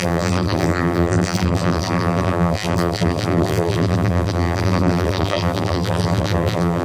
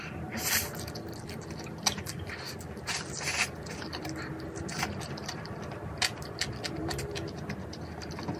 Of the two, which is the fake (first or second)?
first